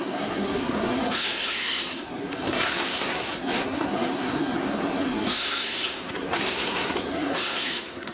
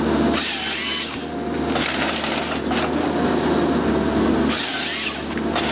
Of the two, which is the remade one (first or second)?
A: first